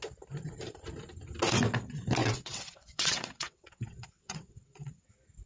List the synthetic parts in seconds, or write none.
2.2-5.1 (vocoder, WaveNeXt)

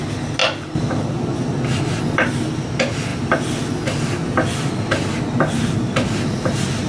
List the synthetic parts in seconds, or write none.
none

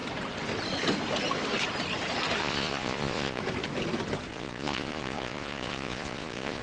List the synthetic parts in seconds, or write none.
2.4-3.4 (vocoder, Vocos); 4.3-6.6

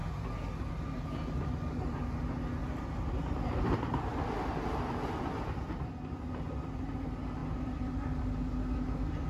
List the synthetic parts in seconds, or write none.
2.6-5.8 (vocoder, BigVGAN v2); 7.4-8.2

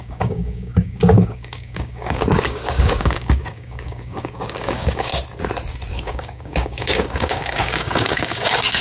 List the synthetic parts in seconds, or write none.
0.0-5.1 (codec, DAC); 5.9-8.8

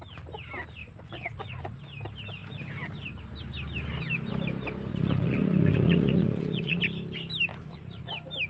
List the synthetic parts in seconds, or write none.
0.8-1.8 (vocoder, Vocos); 4.9-6.8; 7.5-8.1

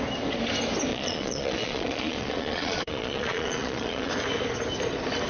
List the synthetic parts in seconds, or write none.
0.9-4.1 (vocoder, Vocos)

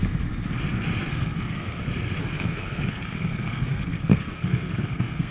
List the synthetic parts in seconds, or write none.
1.1-1.8 (codec, SNAC); 2.2-5.3